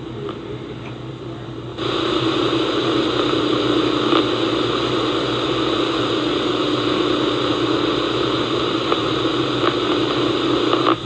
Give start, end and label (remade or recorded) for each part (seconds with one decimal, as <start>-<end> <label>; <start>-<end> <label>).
0.0-11.1 recorded